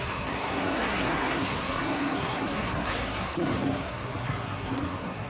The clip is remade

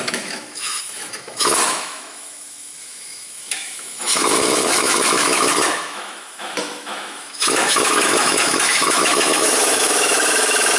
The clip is remade